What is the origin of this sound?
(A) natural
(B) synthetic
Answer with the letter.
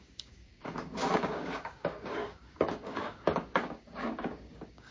B